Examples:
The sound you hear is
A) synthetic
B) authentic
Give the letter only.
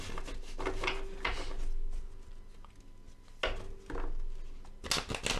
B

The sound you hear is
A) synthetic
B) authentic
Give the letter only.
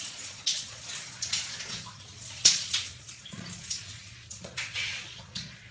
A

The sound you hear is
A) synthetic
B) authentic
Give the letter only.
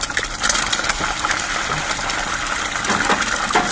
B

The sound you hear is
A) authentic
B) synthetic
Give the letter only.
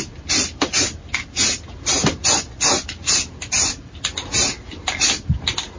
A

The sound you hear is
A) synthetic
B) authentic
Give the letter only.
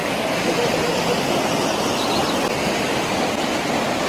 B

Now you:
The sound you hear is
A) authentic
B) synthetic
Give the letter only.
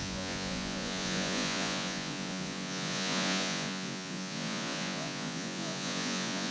B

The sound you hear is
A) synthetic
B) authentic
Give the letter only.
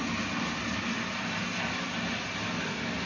B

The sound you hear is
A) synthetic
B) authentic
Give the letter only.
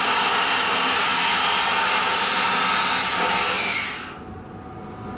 B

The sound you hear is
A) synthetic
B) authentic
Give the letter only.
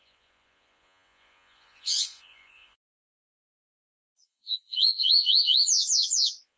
A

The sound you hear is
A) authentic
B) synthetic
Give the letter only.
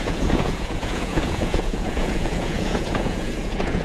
B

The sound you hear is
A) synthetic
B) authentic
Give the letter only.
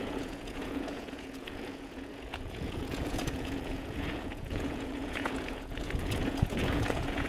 A